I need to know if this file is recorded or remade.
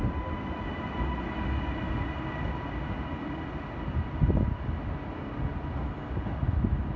recorded